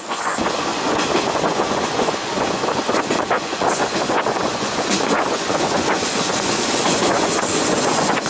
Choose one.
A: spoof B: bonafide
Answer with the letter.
A